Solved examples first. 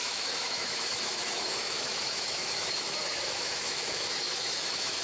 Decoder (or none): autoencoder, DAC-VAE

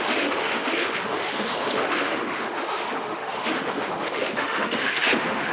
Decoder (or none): autoencoder, DAC-VAE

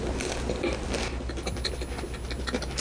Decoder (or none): none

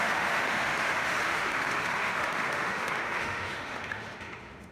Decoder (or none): autoencoder, DAC-VAE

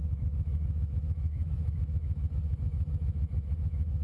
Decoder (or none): autoencoder, DAC-VAE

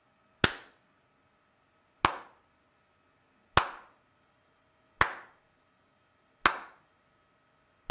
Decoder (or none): none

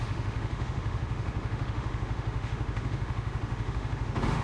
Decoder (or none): autoencoder, DAC-VAE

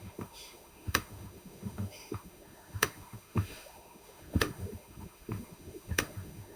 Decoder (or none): autoencoder, DAC-VAE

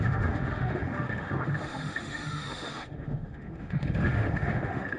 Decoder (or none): autoencoder, DAC-VAE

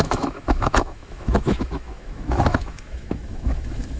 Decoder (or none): autoencoder, DAC-VAE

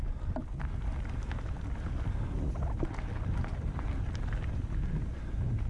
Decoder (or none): none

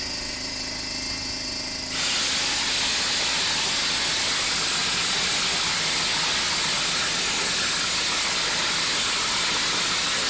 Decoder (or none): none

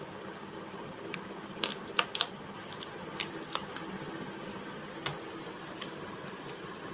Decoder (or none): none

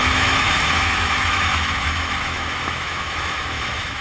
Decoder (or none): autoencoder, DAC-VAE